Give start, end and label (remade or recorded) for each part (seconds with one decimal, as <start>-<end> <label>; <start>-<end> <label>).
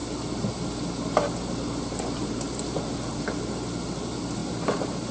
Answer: 0.0-4.4 recorded; 4.4-5.1 remade